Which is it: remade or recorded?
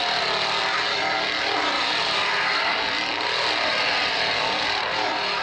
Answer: recorded